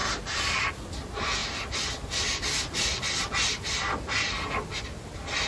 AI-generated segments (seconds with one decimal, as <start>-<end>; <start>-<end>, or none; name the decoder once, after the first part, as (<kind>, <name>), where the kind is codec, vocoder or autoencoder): none